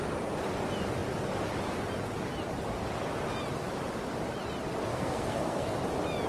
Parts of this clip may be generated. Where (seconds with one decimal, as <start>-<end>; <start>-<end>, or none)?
4.9-5.7